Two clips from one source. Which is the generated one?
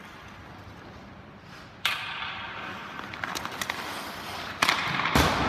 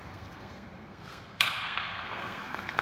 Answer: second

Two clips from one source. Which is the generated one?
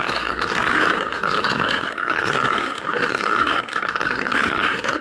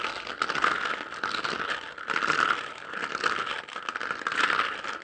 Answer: first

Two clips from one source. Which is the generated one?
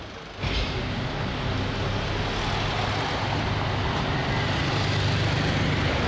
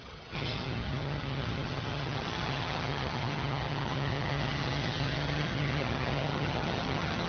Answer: second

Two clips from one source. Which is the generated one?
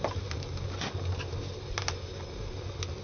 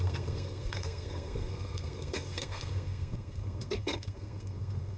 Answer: second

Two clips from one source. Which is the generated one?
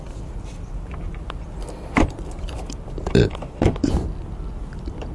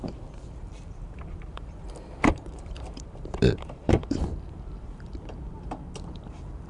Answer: second